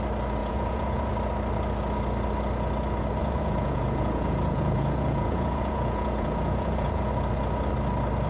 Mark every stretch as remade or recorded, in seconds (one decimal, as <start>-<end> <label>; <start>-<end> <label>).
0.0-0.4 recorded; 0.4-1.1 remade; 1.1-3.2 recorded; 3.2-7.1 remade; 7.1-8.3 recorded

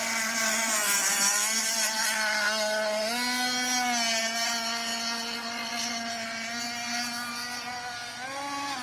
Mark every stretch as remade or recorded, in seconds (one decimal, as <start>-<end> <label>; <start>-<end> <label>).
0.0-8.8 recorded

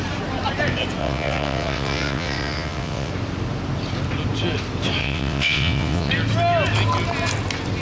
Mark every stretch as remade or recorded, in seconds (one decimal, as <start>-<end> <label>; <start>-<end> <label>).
0.0-1.0 recorded; 1.0-3.1 remade; 3.1-5.0 recorded; 5.0-6.1 remade; 6.1-7.8 recorded

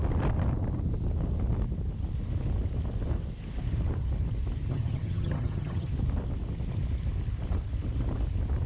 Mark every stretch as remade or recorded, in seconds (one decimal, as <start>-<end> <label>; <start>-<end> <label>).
0.0-4.7 recorded; 4.7-5.9 remade; 5.9-8.7 recorded

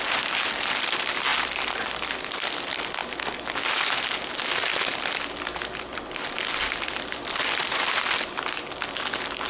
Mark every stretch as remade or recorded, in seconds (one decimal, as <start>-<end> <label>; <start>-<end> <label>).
0.0-3.0 remade; 3.0-5.3 recorded; 5.3-9.5 remade